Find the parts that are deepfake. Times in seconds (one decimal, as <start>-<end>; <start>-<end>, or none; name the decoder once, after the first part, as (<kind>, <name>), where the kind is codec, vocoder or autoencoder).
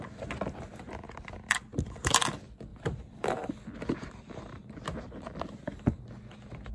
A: none